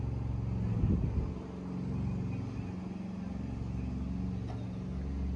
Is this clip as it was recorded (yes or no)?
yes